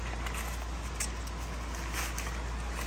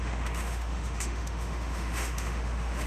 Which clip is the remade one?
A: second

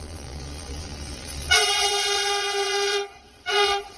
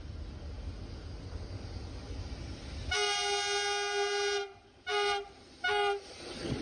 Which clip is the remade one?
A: first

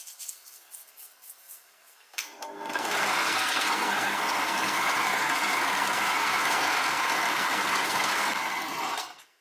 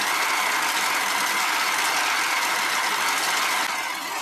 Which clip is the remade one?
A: first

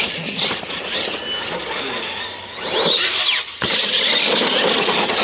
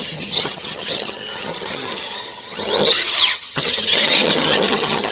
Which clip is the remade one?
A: second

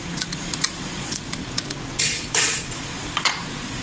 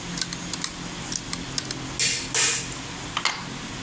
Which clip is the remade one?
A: first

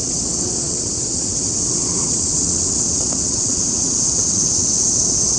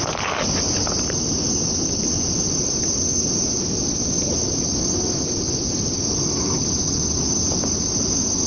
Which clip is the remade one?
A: first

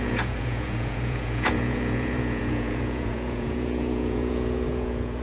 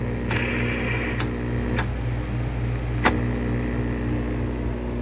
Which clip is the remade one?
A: first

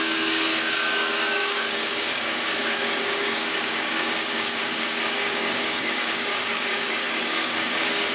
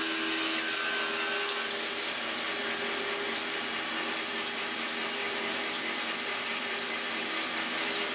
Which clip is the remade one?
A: first